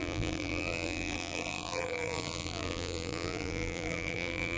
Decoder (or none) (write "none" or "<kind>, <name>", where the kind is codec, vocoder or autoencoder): vocoder, BigVGAN v2